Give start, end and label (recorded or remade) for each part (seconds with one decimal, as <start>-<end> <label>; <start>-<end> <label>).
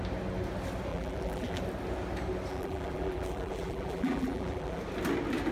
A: 0.0-0.9 recorded; 0.9-1.6 remade; 1.6-2.5 recorded; 2.5-4.8 remade; 4.8-5.5 recorded